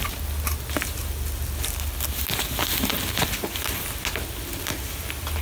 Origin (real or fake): real